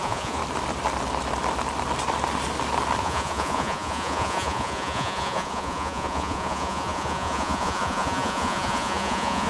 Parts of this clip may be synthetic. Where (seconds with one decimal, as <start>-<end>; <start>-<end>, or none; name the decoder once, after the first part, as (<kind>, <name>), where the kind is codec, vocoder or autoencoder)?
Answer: 0.0-0.4 (vocoder, Vocos); 3.0-9.5